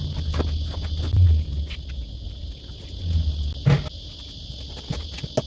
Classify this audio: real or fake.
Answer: real